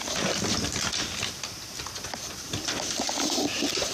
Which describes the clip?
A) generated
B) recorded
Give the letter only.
B